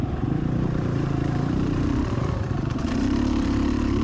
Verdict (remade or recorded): remade